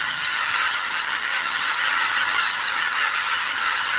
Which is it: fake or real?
fake